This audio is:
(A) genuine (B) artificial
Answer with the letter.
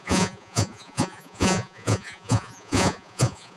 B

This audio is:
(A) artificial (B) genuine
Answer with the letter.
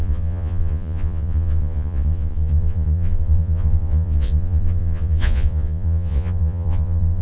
A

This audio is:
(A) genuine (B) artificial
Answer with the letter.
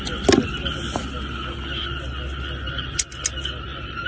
A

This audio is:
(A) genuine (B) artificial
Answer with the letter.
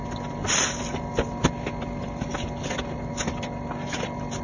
A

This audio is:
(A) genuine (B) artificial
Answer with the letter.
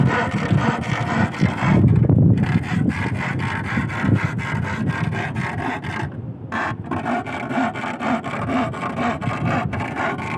A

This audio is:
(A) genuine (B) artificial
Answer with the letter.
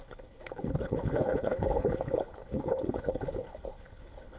B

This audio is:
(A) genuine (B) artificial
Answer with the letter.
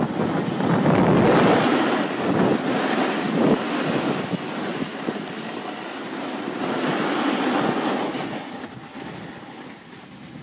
A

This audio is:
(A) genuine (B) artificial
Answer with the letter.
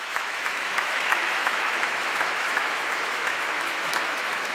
B